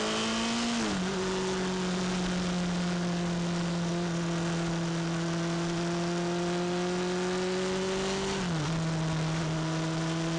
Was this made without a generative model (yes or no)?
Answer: yes